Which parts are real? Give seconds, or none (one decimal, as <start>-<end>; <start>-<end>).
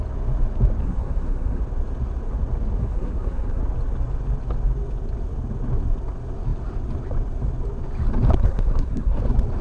0.0-0.8; 1.6-2.8; 3.6-8.3; 9.2-9.6